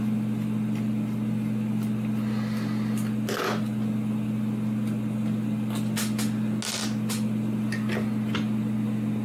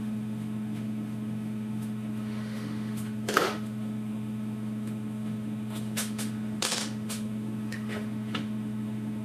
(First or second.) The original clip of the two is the first